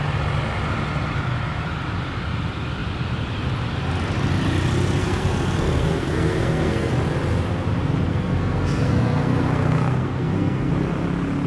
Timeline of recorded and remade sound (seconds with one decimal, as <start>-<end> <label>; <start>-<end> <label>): 0.0-5.0 recorded; 5.0-6.9 remade; 6.9-8.1 recorded; 8.1-10.7 remade; 10.7-11.5 recorded